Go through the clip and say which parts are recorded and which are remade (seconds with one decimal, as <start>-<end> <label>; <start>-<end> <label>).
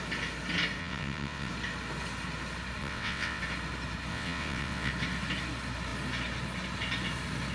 0.0-0.8 recorded; 0.8-1.5 remade; 1.5-2.8 recorded; 2.8-3.4 remade; 3.4-4.1 recorded; 4.1-4.9 remade; 4.9-7.5 recorded